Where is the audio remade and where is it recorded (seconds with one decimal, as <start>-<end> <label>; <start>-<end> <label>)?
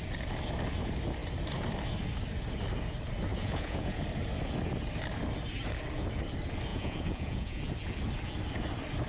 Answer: 0.0-3.3 recorded; 3.3-4.0 remade; 4.0-6.7 recorded; 6.7-7.6 remade; 7.6-9.1 recorded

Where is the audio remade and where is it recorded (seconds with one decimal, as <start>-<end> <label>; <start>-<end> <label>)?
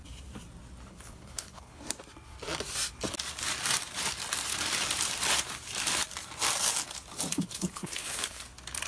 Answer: 0.0-0.9 recorded; 0.9-1.8 remade; 1.8-7.3 recorded; 7.3-8.4 remade; 8.4-8.9 recorded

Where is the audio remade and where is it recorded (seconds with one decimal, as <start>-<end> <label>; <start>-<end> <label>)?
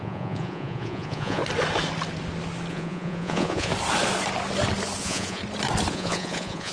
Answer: 0.0-1.4 remade; 1.4-2.7 recorded; 2.7-3.7 remade; 3.7-5.0 recorded; 5.0-5.4 remade; 5.4-5.9 recorded; 5.9-6.7 remade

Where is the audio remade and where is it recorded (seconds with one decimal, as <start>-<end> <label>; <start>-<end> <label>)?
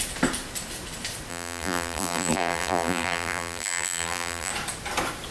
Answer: 0.0-1.3 recorded; 1.3-4.5 remade; 4.5-5.3 recorded